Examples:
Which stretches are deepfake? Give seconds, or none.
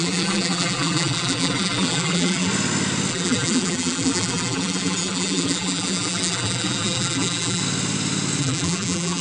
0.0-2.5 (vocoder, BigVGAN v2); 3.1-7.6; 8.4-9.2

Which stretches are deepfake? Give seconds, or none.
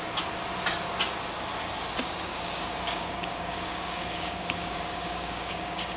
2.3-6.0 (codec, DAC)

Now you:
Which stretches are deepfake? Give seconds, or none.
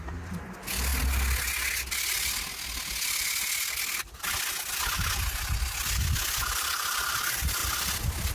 none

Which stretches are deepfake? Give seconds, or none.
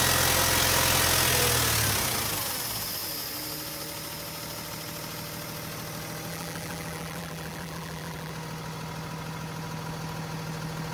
6.3-8.3 (vocoder, BigVGAN v2)